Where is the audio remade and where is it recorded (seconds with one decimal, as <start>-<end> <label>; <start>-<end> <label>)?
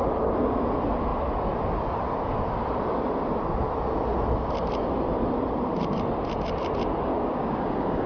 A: 0.0-7.1 recorded; 7.1-8.1 remade